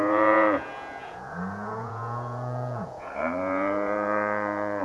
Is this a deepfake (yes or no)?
yes